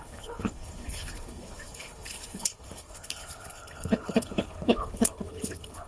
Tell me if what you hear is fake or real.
fake